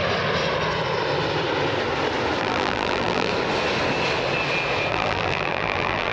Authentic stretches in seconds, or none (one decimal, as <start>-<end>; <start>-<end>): 0.0-2.4; 3.3-4.9